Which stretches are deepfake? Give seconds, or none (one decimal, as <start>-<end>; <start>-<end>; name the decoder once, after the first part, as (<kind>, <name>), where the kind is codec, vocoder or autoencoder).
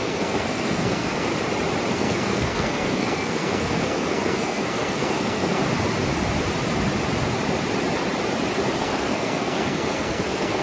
0.0-1.3 (codec, SNAC); 1.9-5.6; 8.8-10.6